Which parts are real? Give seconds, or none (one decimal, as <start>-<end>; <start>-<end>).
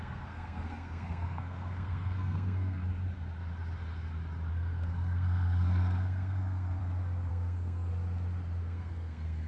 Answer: 2.8-4.5; 6.8-7.3; 7.9-8.6